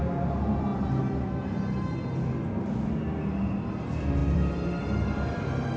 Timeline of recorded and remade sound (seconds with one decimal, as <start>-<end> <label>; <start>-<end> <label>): 0.0-4.2 recorded; 4.2-4.8 remade; 4.8-5.8 recorded

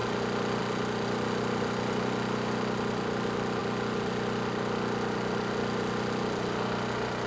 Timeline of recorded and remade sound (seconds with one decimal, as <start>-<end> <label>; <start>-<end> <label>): 0.0-7.3 recorded